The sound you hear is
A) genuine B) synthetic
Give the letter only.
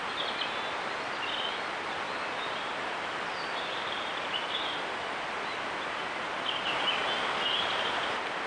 A